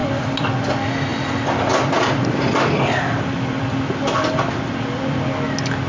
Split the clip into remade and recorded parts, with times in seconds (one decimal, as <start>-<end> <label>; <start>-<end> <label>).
0.0-0.5 remade; 0.5-1.1 recorded; 1.1-4.5 remade; 4.5-5.9 recorded

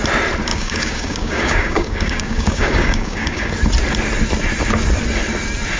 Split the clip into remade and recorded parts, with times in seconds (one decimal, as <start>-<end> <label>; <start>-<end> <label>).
0.0-0.5 recorded; 0.5-3.5 remade; 3.5-5.8 recorded